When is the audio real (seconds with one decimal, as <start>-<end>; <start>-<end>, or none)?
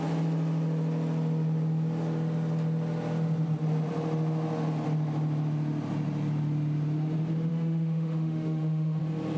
0.0-7.5; 9.0-9.4